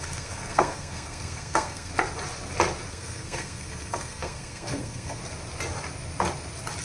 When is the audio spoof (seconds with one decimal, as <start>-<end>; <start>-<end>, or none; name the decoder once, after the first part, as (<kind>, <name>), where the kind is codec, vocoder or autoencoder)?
0.0-1.9 (codec, SNAC); 2.9-5.2